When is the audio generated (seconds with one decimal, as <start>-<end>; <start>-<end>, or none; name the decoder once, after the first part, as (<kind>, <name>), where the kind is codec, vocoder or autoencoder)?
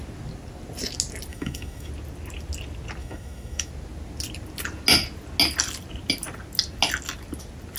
1.3-1.9 (autoencoder, DAC-VAE); 3.0-3.7